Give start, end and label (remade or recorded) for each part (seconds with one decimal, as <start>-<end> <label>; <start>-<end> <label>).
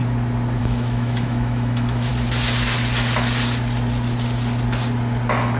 0.0-0.6 recorded; 0.6-2.1 remade; 2.1-5.6 recorded